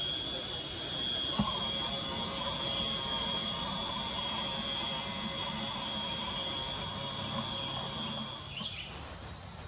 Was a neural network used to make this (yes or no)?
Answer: no